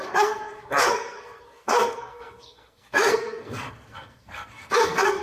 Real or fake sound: fake